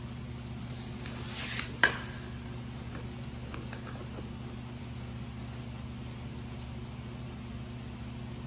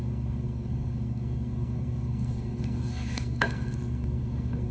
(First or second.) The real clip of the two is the first